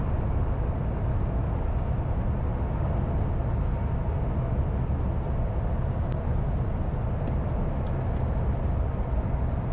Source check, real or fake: real